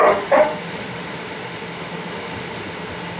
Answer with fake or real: fake